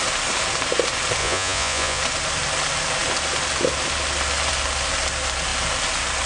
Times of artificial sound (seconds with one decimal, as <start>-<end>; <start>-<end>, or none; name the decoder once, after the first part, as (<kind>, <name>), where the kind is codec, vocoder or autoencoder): 1.2-2.0 (vocoder, Vocos)

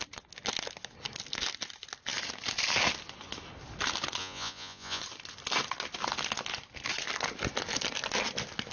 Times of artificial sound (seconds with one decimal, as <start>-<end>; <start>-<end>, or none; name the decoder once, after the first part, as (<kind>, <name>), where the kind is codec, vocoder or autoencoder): 4.2-5.0 (vocoder, Vocos)

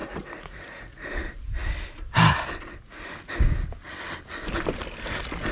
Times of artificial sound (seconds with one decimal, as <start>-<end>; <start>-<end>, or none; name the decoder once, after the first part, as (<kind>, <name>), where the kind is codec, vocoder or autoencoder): 0.0-1.1 (vocoder, Vocos)